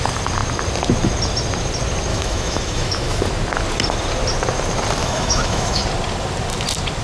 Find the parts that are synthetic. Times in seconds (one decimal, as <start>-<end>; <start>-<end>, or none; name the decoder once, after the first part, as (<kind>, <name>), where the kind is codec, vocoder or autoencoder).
2.1-3.2 (autoencoder, DAC-VAE); 5.0-5.8